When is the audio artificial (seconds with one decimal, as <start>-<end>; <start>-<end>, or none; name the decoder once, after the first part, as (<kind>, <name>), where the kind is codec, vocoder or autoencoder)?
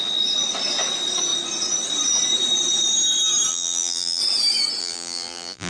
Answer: 3.5-4.2 (vocoder, BigVGAN v2); 4.8-5.7